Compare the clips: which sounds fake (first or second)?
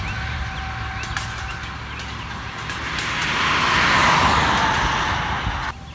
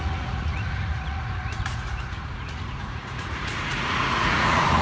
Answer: second